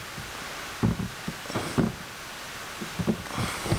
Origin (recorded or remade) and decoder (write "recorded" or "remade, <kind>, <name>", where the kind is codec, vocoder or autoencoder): recorded